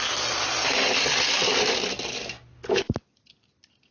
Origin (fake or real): real